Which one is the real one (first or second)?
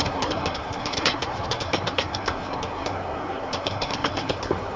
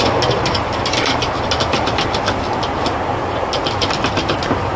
second